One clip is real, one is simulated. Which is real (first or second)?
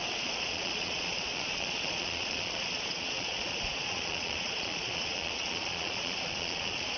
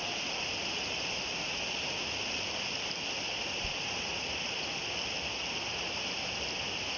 second